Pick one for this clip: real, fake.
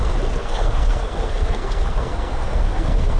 fake